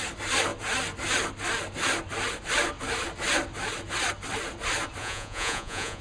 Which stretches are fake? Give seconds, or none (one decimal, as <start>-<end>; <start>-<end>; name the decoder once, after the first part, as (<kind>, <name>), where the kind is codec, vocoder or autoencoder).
5.0-6.0 (vocoder, Vocos)